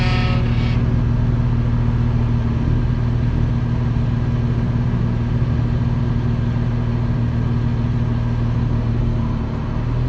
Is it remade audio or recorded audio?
recorded